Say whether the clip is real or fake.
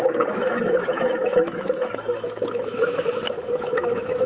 fake